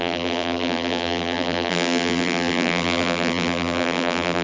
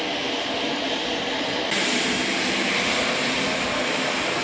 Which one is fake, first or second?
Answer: first